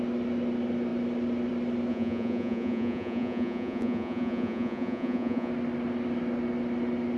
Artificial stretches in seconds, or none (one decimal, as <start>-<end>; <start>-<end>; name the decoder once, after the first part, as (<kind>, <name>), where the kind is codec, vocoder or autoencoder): 1.9-5.5 (vocoder, Vocos)